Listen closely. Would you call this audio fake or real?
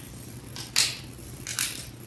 real